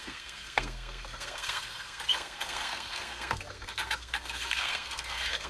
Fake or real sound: fake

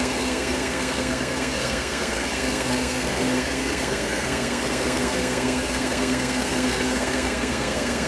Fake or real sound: fake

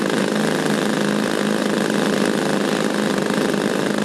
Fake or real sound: real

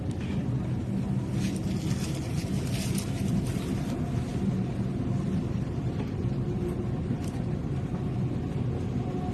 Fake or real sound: real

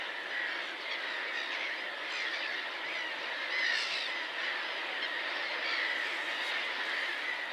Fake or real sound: real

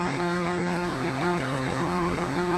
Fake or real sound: fake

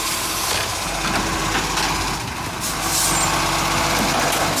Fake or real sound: real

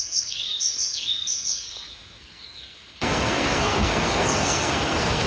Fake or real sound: fake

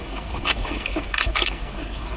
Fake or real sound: fake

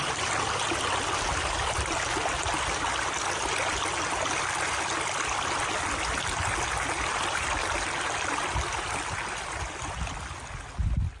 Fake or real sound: real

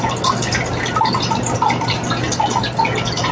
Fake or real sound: real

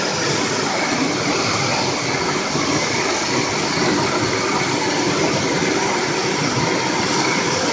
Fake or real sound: real